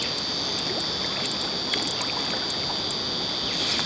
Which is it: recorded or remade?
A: recorded